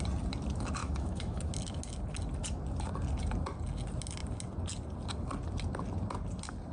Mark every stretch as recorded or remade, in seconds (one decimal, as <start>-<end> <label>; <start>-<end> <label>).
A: 0.0-0.8 recorded; 0.8-1.5 remade; 1.5-6.7 recorded